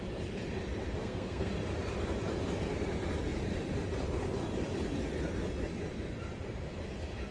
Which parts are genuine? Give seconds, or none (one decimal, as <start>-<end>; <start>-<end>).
0.0-1.0; 1.5-7.3